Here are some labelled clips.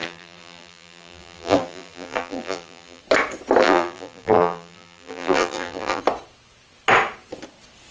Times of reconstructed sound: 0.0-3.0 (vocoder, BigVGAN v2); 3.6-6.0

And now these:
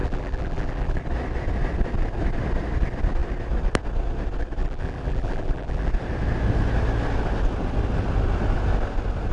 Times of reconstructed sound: 0.0-1.0 (vocoder, BigVGAN v2); 4.6-5.9

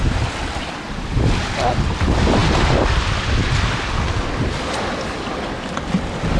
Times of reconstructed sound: none